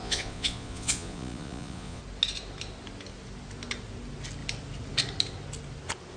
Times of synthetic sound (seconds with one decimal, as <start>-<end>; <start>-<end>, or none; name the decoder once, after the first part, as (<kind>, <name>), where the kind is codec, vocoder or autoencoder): 0.0-2.0 (vocoder, Vocos)